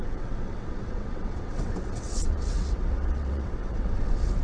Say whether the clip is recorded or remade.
remade